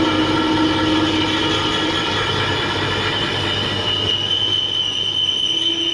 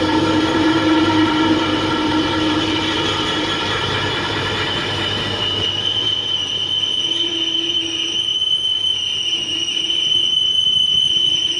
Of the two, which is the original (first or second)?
first